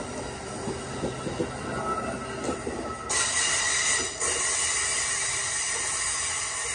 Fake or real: real